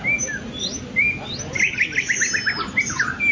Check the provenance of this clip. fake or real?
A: real